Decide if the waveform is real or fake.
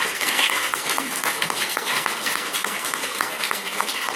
fake